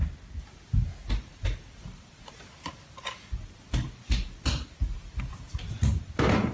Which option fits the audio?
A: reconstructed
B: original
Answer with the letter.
B